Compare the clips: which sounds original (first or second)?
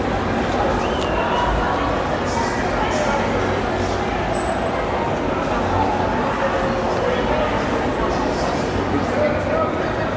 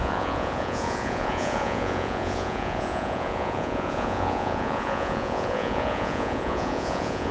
first